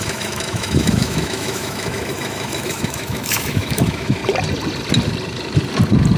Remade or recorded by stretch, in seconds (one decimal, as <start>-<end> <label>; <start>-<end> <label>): 0.0-4.2 remade; 4.2-6.2 recorded